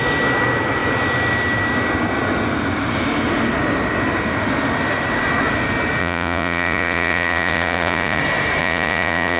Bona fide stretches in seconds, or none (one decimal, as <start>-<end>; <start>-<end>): 0.0-6.0; 8.2-8.6